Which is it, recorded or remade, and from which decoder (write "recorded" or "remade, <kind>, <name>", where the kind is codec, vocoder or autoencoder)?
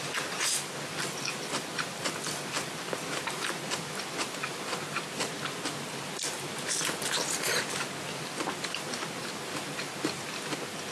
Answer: recorded